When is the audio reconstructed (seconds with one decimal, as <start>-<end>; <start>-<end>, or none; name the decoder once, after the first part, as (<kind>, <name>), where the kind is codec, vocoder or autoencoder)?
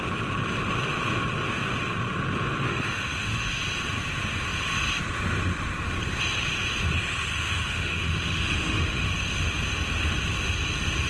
2.7-3.5 (autoencoder, DAC-VAE); 7.3-9.1